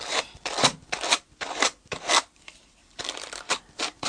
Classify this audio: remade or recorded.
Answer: remade